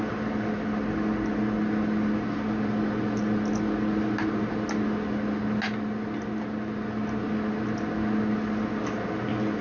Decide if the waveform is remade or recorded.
recorded